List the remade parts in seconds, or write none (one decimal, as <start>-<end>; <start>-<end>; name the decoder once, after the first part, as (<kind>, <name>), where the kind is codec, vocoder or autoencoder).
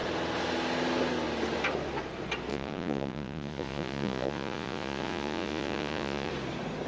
2.5-6.3 (vocoder, Vocos)